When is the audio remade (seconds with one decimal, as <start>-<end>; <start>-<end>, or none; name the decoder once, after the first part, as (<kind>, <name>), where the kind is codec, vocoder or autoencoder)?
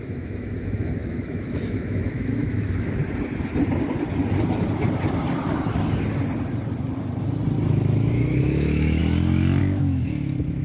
0.0-3.0 (autoencoder, DAC-VAE); 7.7-9.0; 9.6-10.6